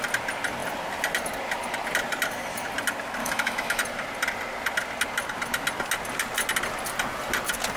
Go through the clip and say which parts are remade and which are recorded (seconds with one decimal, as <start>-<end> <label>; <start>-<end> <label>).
0.0-3.2 recorded; 3.2-3.8 remade; 3.8-7.8 recorded